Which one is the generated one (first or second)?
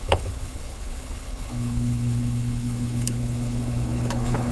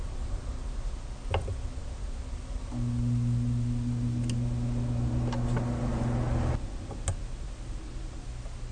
first